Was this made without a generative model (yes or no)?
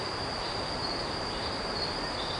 no